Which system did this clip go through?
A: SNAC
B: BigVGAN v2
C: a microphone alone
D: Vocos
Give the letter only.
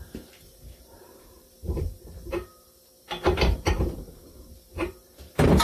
B